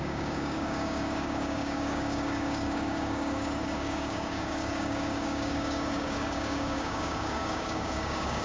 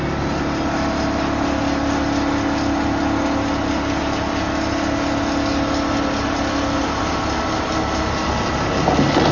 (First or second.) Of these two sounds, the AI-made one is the first